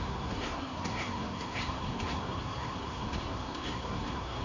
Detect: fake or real fake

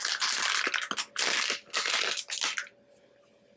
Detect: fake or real real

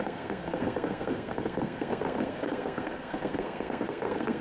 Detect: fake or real fake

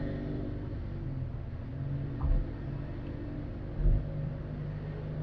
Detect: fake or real real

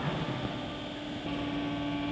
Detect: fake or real real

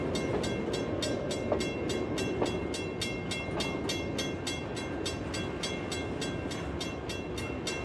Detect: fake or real real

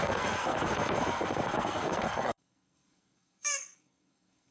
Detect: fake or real fake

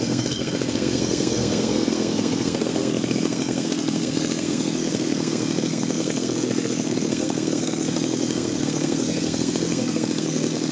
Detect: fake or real fake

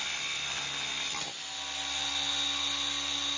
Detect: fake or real real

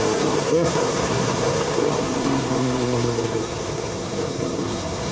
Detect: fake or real fake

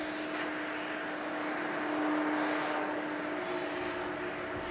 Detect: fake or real real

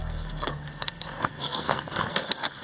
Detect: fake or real fake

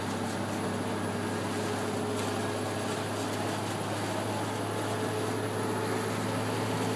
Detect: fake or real real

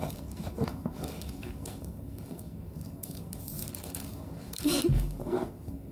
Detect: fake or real fake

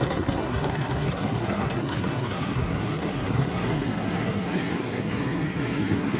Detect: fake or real fake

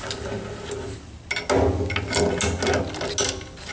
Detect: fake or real real